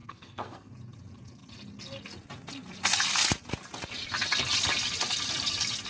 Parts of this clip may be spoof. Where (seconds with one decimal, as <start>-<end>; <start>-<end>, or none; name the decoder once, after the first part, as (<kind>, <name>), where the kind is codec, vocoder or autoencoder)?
0.0-0.7 (codec, SNAC)